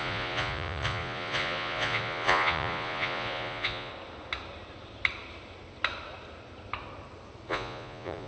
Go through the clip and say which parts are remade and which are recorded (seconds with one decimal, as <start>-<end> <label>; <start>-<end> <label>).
0.0-3.9 remade; 3.9-7.5 recorded; 7.5-8.3 remade

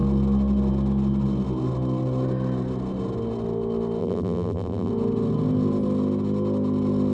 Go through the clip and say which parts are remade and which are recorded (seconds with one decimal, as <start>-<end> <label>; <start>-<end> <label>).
0.0-4.0 recorded; 4.0-4.9 remade; 4.9-7.1 recorded